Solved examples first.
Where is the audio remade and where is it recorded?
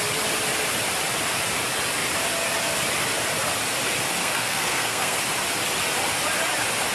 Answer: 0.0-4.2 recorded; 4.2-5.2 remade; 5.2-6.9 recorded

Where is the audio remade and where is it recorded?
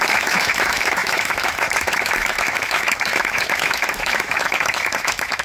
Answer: 0.0-5.4 remade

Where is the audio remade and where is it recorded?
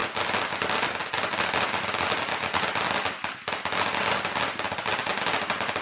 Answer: 0.0-5.8 recorded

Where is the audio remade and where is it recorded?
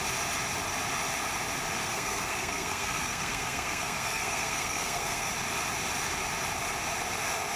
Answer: 0.0-1.8 recorded; 1.8-5.3 remade; 5.3-7.6 recorded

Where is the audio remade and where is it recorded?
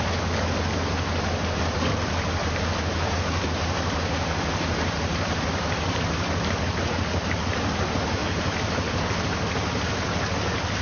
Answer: 0.0-2.4 recorded; 2.4-6.0 remade; 6.0-8.2 recorded; 8.2-9.1 remade; 9.1-10.8 recorded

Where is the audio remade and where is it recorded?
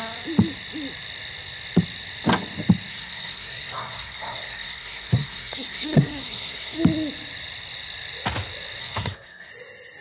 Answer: 0.0-2.9 recorded; 2.9-6.8 remade; 6.8-8.8 recorded; 8.8-9.5 remade; 9.5-10.0 recorded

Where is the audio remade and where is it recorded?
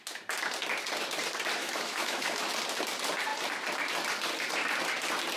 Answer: 0.0-1.6 recorded; 1.6-2.5 remade; 2.5-5.4 recorded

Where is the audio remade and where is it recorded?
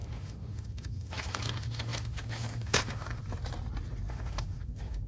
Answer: 0.0-3.2 remade; 3.2-4.1 recorded; 4.1-5.1 remade